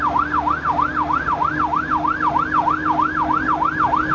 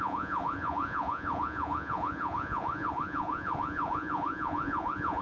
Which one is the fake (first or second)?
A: second